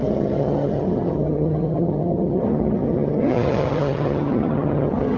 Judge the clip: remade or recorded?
remade